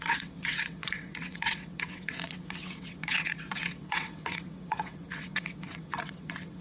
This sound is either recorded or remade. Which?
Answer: remade